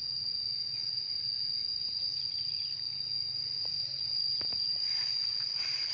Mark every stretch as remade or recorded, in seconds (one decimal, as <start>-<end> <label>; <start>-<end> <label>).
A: 0.0-5.9 recorded